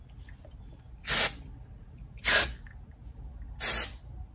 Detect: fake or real real